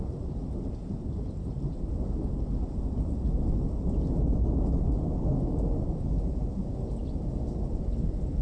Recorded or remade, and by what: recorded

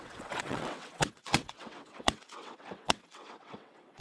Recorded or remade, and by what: remade, vocoder, WaveNeXt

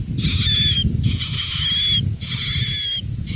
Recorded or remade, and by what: recorded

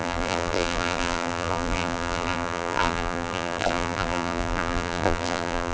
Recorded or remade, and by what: remade, vocoder, BigVGAN v2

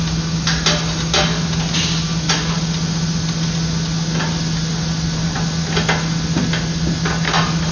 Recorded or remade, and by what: recorded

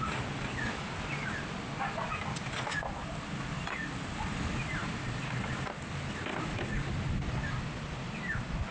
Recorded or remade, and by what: recorded